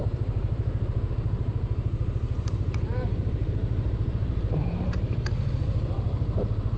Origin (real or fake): fake